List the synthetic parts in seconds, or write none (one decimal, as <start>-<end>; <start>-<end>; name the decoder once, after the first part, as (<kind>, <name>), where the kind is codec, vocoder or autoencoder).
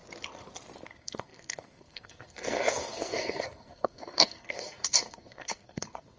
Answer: 0.9-6.2 (codec, SNAC)